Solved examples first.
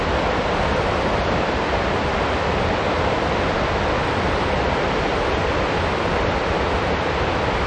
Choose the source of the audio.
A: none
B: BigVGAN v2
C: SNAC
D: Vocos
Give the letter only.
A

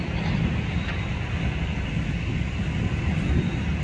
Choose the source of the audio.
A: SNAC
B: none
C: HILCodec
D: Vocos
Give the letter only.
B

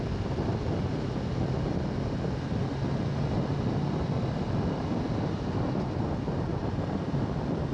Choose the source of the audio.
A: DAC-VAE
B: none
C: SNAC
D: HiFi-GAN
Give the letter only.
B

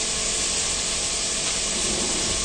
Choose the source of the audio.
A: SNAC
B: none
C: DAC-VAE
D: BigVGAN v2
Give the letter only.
B